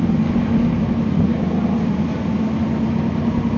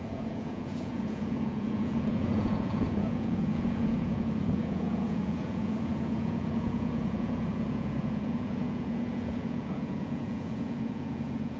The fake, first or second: second